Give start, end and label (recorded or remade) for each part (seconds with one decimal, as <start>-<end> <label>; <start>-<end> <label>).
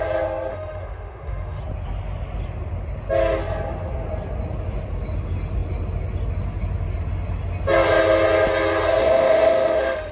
0.0-0.5 recorded; 0.5-1.6 remade; 1.6-9.0 recorded; 9.0-10.1 remade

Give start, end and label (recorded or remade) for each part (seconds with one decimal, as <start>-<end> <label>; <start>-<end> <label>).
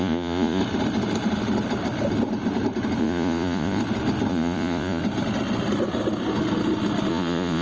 0.0-0.6 remade; 0.6-3.0 recorded; 3.0-3.8 remade; 3.8-4.3 recorded; 4.3-5.0 remade; 5.0-7.1 recorded; 7.1-7.6 remade